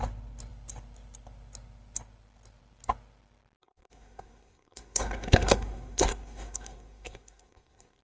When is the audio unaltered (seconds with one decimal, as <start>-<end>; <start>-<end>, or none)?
0.0-3.6